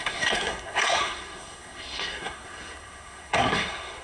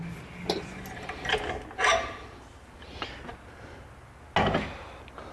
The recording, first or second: second